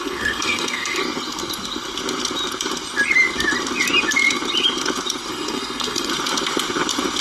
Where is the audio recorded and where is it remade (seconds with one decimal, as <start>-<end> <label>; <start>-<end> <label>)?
0.0-1.0 remade; 1.0-5.3 recorded; 5.3-6.1 remade; 6.1-7.2 recorded